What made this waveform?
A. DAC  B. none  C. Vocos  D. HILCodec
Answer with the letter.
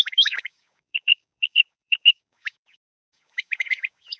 A